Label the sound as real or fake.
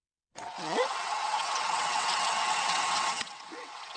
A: fake